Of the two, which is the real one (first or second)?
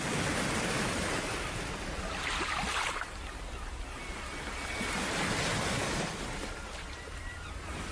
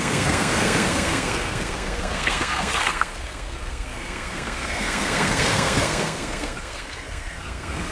first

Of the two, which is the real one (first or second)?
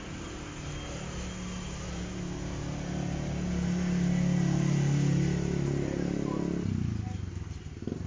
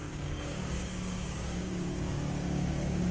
first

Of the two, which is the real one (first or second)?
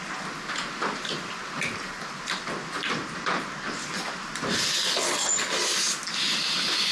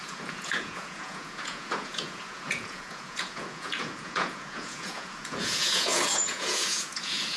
first